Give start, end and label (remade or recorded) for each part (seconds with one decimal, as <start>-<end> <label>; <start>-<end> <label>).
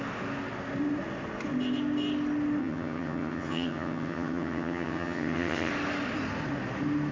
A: 0.0-2.6 recorded; 2.6-5.7 remade; 5.7-7.1 recorded